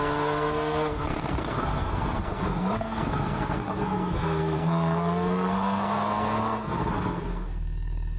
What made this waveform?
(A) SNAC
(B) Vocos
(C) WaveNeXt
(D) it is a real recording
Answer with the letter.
A